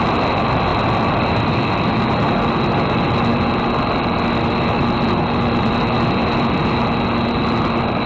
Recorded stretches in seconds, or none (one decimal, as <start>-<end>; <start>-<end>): 0.0-0.7; 1.5-8.1